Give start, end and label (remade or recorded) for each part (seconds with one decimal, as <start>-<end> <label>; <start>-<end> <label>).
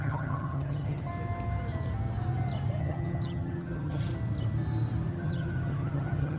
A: 0.0-1.1 remade; 1.1-2.8 recorded; 2.8-4.1 remade; 4.1-5.1 recorded; 5.1-6.4 remade